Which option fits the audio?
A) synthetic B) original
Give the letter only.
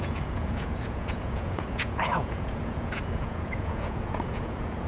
A